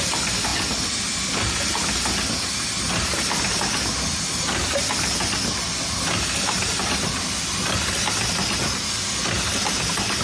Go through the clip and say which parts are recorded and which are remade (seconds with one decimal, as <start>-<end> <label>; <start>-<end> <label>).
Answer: 0.0-10.2 recorded